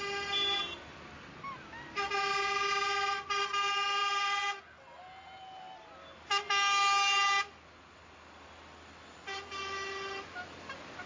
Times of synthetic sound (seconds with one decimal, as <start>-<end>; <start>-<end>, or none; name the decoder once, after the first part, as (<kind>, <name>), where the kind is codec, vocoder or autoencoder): 4.0-4.6 (vocoder, BigVGAN v2)